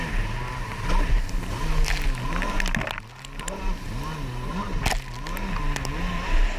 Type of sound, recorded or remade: recorded